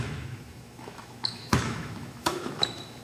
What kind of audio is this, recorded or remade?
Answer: remade